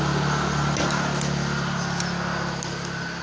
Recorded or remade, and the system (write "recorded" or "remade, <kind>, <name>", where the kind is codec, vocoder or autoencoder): recorded